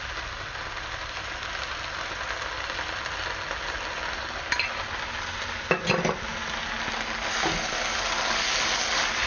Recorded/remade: recorded